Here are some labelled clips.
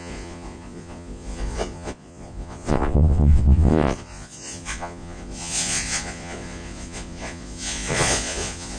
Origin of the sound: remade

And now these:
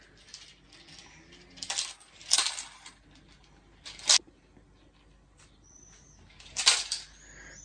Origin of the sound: recorded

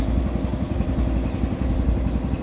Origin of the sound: recorded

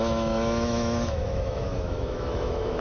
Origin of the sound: remade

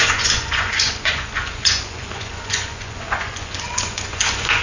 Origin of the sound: remade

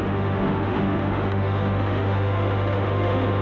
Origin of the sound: remade